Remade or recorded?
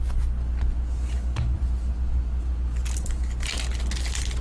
recorded